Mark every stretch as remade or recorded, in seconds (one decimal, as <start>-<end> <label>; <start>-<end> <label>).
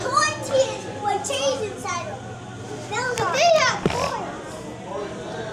0.0-5.5 recorded